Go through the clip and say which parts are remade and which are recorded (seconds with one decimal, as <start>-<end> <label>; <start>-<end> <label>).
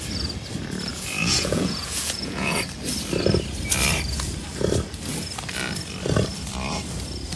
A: 0.0-0.9 recorded; 0.9-2.6 remade; 2.6-7.4 recorded